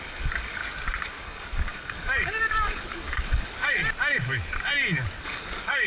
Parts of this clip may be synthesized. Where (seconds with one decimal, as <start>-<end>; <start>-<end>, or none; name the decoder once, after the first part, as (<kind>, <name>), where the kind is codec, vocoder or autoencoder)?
0.0-0.6 (codec, DAC); 1.2-3.8; 5.2-5.9